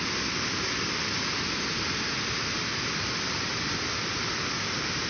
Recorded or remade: recorded